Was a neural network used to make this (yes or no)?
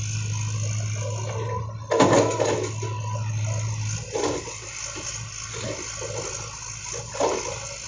no